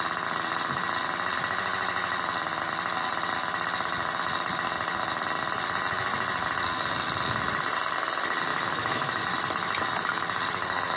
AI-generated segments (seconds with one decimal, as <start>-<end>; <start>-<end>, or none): 8.5-9.2